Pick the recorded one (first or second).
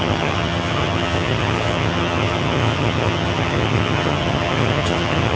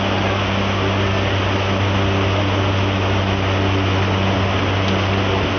second